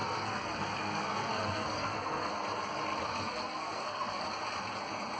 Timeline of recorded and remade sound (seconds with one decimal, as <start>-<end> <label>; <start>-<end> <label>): 0.0-2.3 remade; 2.3-3.1 recorded; 3.1-4.2 remade; 4.2-5.2 recorded